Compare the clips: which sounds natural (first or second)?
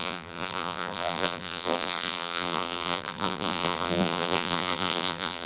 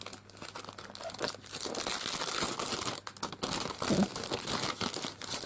second